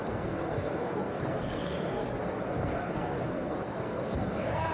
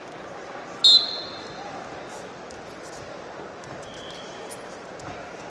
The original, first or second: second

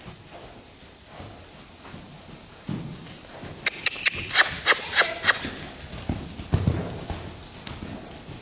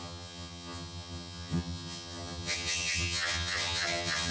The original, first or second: first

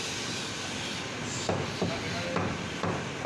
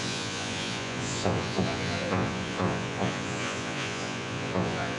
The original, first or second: first